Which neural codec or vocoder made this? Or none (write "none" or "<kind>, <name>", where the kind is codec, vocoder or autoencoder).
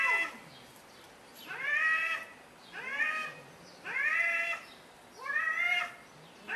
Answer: none